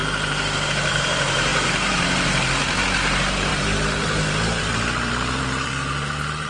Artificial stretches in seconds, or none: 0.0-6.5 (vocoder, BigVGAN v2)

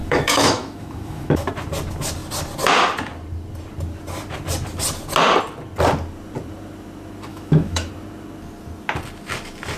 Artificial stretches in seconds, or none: 0.0-1.5 (autoencoder, DAC-VAE); 7.3-7.9

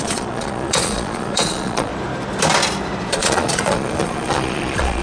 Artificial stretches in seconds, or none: 0.0-1.9 (vocoder, Vocos); 3.1-5.0

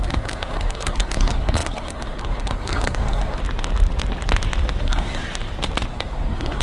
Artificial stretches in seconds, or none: 0.0-3.4 (codec, SNAC); 4.8-5.2; 5.9-6.6

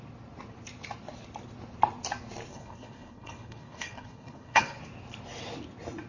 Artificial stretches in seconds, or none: 2.5-4.8 (codec, HILCodec)

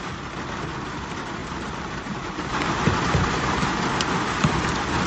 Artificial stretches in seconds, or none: 1.4-3.7 (vocoder, BigVGAN v2)

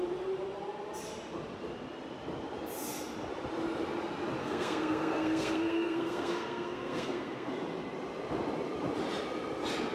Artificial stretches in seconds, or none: 4.4-7.5 (codec, SNAC)